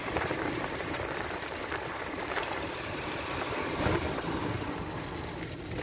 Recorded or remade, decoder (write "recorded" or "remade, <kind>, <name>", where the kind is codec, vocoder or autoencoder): recorded